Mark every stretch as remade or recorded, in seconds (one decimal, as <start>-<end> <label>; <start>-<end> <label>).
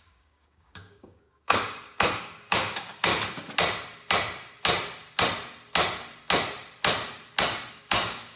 0.0-3.1 remade; 3.1-7.7 recorded; 7.7-8.4 remade